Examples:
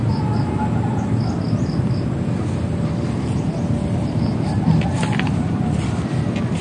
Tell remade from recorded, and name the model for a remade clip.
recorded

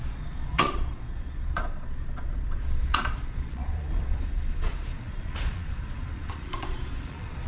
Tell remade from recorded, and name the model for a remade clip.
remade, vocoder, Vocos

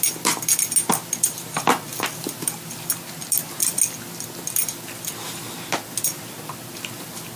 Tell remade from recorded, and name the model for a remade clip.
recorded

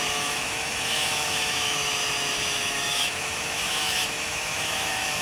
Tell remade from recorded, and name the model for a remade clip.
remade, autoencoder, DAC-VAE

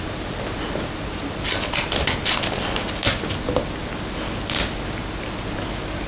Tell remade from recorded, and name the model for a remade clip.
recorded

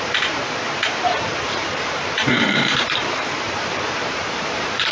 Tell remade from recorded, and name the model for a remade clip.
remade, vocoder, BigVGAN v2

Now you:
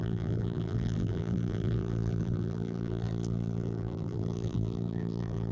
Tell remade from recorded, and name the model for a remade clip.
remade, vocoder, BigVGAN v2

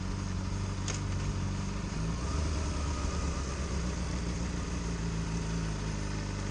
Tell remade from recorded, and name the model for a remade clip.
recorded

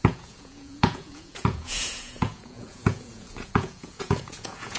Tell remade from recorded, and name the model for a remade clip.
remade, vocoder, Vocos